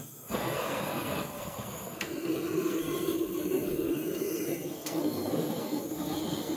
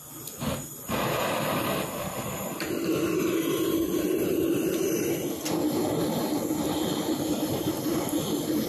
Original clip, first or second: second